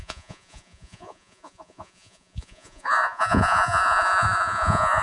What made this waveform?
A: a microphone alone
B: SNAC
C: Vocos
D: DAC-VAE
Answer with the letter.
C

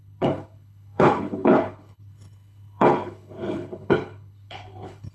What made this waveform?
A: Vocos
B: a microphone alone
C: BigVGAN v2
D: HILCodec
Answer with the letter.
D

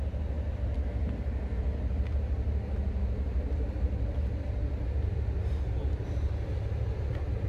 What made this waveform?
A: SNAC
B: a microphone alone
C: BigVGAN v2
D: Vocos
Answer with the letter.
B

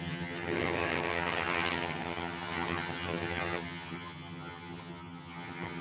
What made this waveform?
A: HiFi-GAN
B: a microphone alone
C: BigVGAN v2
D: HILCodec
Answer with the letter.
A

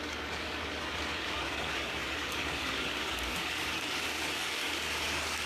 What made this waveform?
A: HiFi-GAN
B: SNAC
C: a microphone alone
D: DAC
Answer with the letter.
D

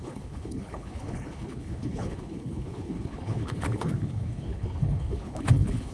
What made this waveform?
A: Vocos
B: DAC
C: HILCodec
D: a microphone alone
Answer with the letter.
C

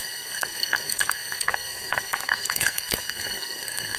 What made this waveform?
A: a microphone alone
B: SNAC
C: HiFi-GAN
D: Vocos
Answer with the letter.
B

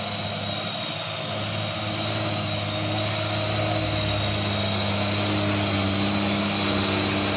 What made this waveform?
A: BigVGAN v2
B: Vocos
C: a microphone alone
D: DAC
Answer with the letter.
C